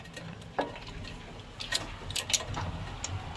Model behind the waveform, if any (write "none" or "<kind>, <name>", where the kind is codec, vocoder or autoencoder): none